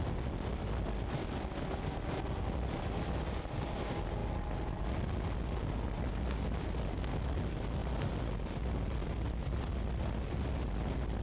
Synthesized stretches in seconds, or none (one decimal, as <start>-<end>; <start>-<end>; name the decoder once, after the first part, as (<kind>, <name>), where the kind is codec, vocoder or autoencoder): none